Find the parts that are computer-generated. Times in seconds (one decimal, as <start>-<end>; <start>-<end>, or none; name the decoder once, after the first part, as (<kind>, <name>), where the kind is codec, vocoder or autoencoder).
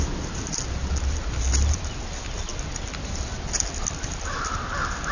none